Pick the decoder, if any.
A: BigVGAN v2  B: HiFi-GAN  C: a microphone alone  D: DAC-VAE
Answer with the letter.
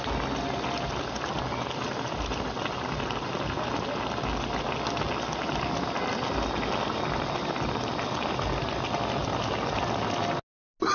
C